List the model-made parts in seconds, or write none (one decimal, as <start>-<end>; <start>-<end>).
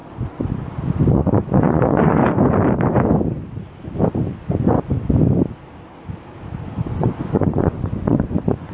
1.1-2.2; 6.9-8.7